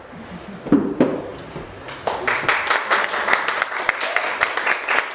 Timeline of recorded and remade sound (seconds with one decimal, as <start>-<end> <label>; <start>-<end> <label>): 0.0-5.1 recorded